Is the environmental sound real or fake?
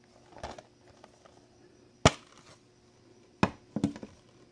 real